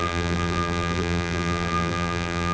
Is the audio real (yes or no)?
no